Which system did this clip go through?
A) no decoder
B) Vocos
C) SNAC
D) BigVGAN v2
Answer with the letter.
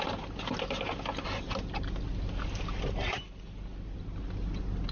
A